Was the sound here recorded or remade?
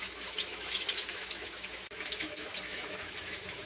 remade